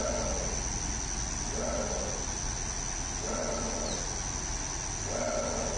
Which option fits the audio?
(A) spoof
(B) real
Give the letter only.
B